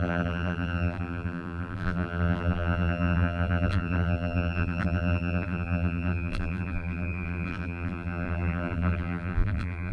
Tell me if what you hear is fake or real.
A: fake